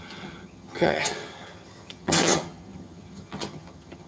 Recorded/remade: remade